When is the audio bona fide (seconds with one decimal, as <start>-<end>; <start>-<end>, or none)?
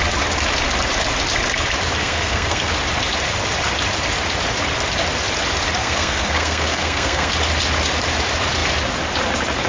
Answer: 0.0-2.0; 2.7-5.8; 7.3-9.7